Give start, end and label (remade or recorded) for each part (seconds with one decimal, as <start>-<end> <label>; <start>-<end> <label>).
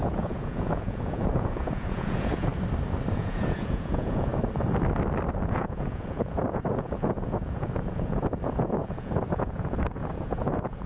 0.0-2.5 remade; 2.5-3.1 recorded; 3.1-4.3 remade; 4.3-5.4 recorded; 5.4-10.9 remade